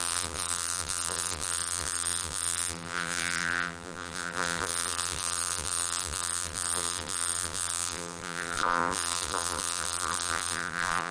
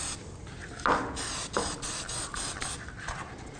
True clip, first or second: second